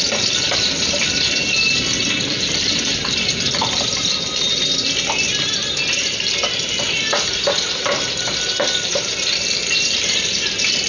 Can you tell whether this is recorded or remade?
remade